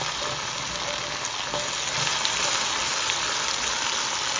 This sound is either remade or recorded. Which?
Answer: recorded